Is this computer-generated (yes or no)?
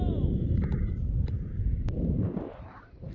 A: yes